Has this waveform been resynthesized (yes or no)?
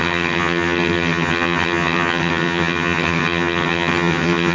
yes